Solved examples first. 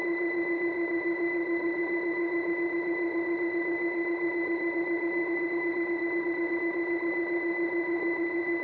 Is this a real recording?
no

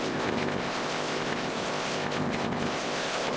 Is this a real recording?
no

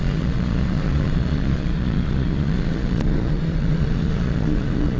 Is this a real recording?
no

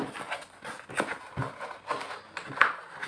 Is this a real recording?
yes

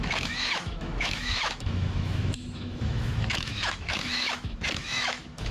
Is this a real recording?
no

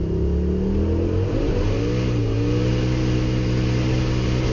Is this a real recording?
yes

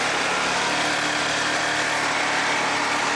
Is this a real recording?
yes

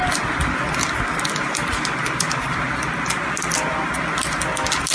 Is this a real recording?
yes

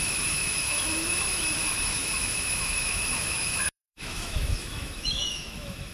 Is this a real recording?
no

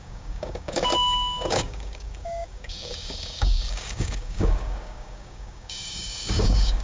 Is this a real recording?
no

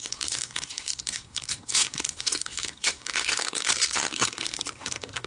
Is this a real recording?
no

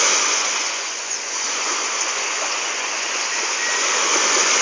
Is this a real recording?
no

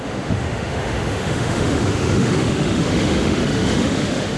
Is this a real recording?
no